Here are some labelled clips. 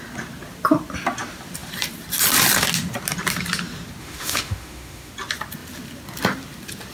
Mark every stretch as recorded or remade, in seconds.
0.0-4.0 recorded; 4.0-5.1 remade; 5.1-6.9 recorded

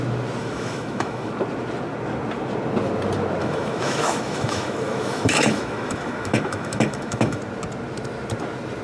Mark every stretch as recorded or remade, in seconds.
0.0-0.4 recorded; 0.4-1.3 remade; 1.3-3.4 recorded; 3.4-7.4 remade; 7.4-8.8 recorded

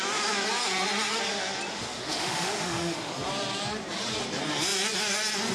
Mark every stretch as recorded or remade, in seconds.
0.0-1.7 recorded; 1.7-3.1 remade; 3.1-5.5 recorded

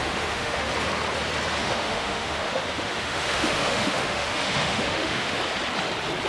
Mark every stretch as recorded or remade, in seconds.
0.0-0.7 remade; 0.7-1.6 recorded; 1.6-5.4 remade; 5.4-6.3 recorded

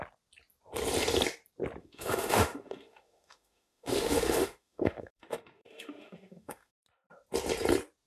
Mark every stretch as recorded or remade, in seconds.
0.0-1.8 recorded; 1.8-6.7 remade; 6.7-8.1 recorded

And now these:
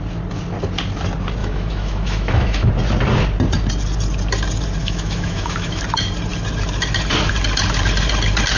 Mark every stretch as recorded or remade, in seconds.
0.0-1.4 recorded; 1.4-2.7 remade; 2.7-4.8 recorded; 4.8-5.8 remade; 5.8-8.6 recorded

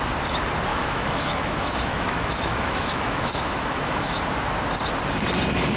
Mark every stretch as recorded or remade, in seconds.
0.0-0.7 recorded; 0.7-4.2 remade; 4.2-5.8 recorded

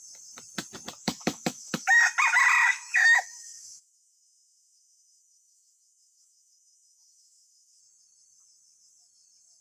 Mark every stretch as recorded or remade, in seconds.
0.0-1.0 recorded; 1.0-2.0 remade; 2.0-2.6 recorded; 2.6-7.8 remade; 7.8-9.6 recorded